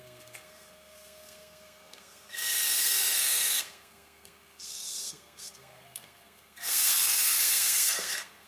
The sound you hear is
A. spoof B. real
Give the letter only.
A